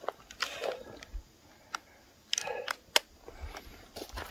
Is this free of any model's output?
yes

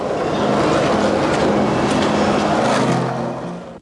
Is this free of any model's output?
yes